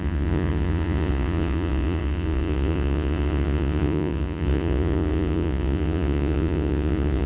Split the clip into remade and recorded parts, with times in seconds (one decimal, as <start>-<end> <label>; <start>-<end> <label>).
0.0-7.3 remade